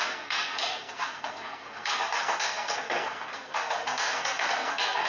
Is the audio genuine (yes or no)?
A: no